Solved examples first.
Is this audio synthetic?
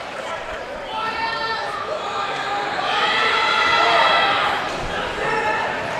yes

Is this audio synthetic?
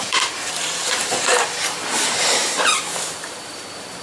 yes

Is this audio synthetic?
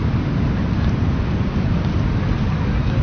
no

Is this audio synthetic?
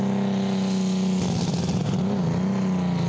no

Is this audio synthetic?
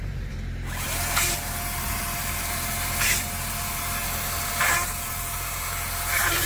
yes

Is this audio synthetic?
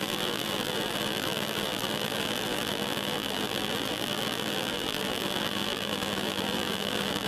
yes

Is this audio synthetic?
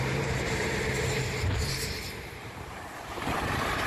yes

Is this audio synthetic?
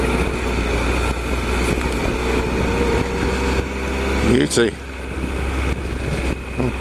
no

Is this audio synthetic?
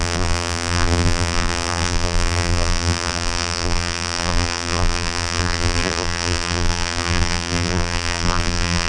yes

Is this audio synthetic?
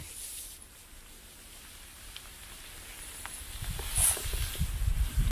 no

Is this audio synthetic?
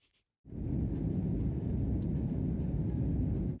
no